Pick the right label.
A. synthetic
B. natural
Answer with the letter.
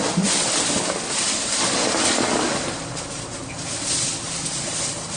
B